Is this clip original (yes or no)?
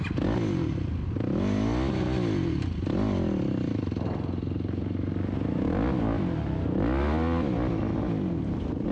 yes